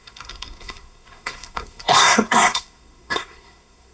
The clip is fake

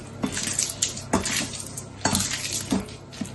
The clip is real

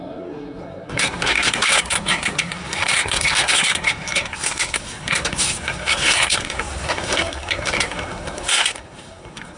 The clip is fake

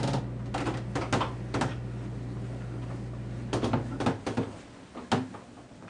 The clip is real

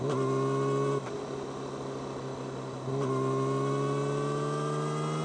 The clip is real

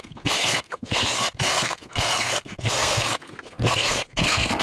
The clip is fake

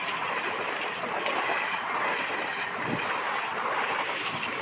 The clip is real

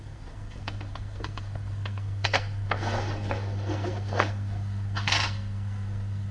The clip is fake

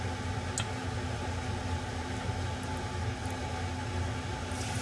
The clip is real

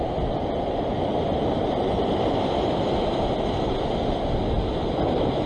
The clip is real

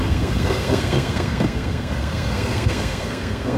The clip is fake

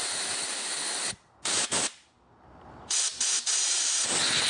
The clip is real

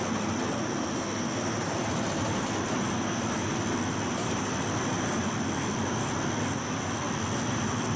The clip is real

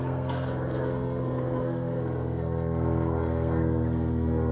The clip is fake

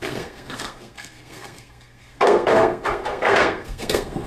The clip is fake